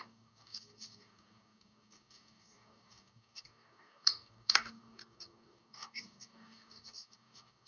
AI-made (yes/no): yes